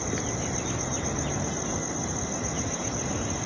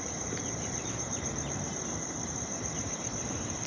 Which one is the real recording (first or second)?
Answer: first